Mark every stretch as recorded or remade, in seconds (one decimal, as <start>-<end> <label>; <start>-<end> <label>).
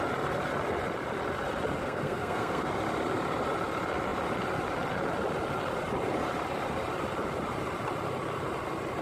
0.0-1.8 recorded; 1.8-2.7 remade; 2.7-9.0 recorded